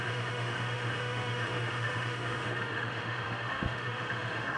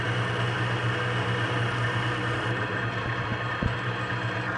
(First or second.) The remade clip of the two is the first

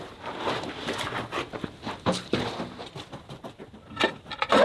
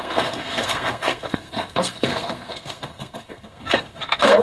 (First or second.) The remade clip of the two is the second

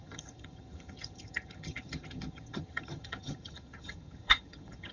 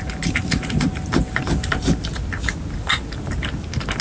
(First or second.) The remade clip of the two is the first